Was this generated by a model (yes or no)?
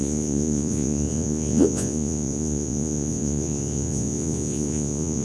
yes